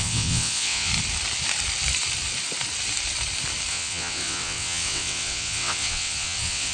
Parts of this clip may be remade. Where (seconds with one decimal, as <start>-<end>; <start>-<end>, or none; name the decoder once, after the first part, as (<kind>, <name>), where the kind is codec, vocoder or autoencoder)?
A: 0.0-0.9 (vocoder, WaveNeXt); 3.7-6.7